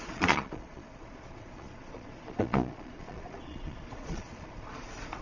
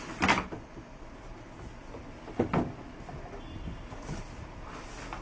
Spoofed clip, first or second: first